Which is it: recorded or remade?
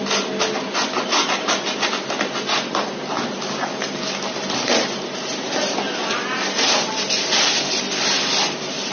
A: recorded